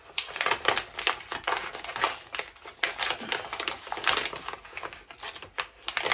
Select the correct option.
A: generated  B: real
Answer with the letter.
B